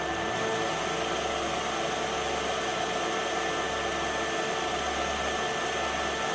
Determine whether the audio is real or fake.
real